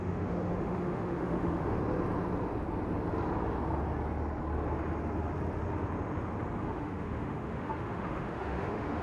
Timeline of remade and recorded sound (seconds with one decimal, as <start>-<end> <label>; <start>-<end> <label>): 0.0-1.8 remade; 1.8-6.6 recorded; 6.6-9.0 remade